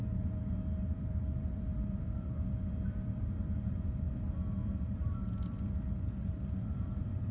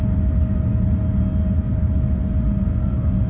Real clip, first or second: second